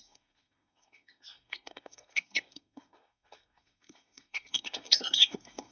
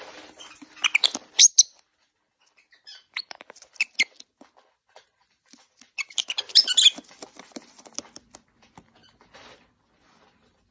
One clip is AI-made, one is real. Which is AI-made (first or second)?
first